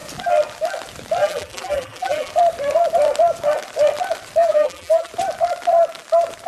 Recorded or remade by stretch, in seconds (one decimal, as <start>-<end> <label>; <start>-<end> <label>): 0.0-1.2 recorded; 1.2-2.3 remade; 2.3-4.4 recorded; 4.4-5.1 remade; 5.1-6.5 recorded